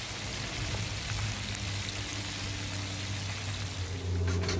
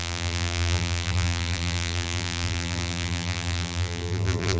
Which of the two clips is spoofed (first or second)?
second